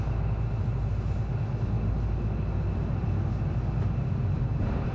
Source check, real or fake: real